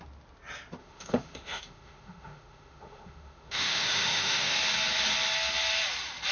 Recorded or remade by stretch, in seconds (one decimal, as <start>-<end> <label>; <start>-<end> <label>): 0.0-0.8 recorded; 0.8-4.6 remade; 4.6-6.3 recorded